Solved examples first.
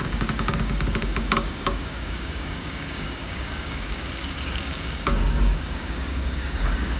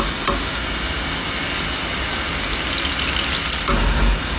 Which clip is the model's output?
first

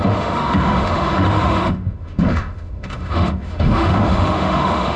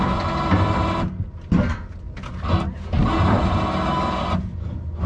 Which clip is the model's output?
first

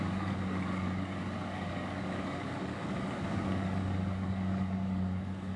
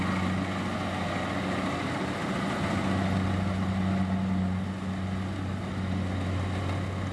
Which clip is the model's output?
first